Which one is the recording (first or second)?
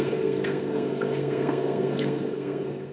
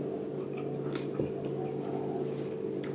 second